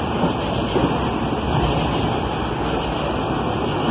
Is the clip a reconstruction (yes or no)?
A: no